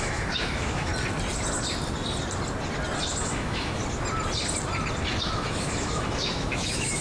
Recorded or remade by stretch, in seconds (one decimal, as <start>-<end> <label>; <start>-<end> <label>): 0.0-0.9 remade; 0.9-3.2 recorded; 3.2-3.8 remade; 3.8-5.2 recorded; 5.2-7.0 remade